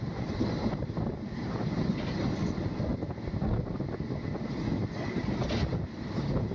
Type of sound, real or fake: real